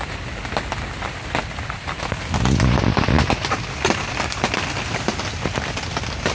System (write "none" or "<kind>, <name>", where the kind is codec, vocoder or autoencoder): none